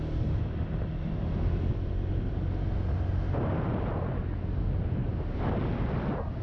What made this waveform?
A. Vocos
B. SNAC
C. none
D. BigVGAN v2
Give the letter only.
C